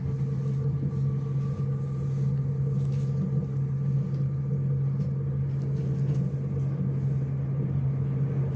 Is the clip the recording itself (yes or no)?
yes